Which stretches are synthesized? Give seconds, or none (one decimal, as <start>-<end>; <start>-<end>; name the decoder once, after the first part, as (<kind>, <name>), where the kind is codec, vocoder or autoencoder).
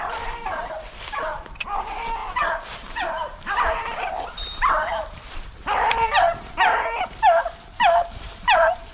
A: 0.0-8.9 (vocoder, BigVGAN v2)